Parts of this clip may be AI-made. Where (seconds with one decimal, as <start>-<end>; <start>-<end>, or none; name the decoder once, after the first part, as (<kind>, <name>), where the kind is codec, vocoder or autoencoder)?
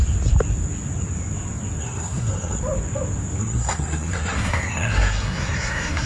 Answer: 1.8-2.6 (codec, SNAC); 3.4-6.1